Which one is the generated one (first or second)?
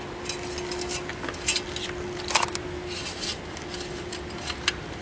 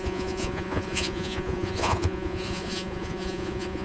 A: second